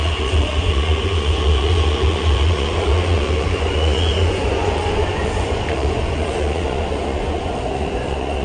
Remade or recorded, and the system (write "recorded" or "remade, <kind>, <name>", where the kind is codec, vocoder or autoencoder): remade, vocoder, Vocos